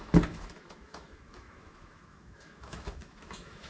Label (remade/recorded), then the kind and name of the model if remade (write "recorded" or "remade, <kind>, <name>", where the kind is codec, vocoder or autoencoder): remade, autoencoder, DAC-VAE